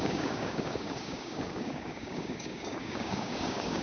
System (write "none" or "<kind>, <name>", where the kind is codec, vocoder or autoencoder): codec, DAC